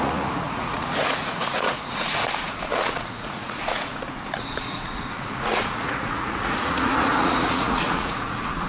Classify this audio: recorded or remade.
remade